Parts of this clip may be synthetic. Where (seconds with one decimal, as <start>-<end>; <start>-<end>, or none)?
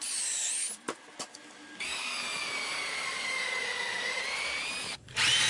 1.3-4.2